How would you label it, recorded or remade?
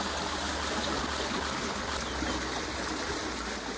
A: recorded